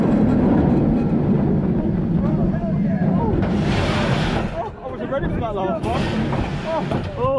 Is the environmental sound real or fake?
real